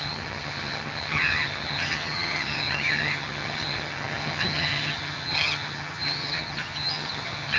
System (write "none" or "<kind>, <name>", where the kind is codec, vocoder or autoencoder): vocoder, HiFi-GAN